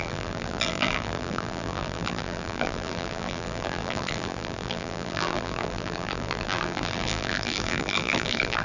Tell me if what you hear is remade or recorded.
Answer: remade